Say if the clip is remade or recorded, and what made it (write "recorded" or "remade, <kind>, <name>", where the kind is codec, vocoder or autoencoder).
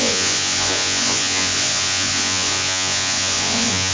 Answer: remade, vocoder, Vocos